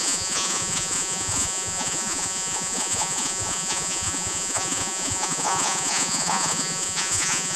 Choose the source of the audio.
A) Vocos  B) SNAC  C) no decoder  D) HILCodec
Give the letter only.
A